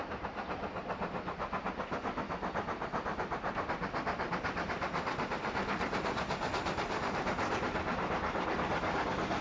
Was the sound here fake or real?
fake